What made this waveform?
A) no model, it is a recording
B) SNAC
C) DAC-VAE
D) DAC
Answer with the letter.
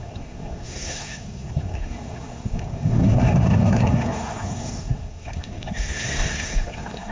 B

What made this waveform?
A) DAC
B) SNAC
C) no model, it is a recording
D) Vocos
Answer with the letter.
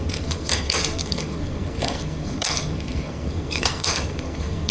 B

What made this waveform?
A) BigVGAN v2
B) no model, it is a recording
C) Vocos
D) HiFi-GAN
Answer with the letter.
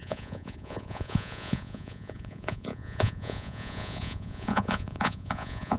C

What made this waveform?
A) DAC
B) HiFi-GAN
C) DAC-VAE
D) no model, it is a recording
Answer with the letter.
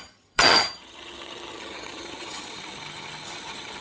B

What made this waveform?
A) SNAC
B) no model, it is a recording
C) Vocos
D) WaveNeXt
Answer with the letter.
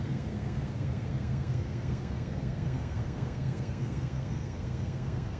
A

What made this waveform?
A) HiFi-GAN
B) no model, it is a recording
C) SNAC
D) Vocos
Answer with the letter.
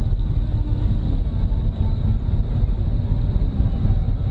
B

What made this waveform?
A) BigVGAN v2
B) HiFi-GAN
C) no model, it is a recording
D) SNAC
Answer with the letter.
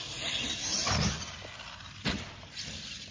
C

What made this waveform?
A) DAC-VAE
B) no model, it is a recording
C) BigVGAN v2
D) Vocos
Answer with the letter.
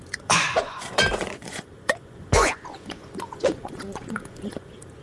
D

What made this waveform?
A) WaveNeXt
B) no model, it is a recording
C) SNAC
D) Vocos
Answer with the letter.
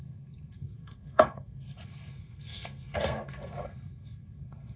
C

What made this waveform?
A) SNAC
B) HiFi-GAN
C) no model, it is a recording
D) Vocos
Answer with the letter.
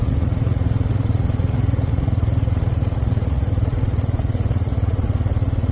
D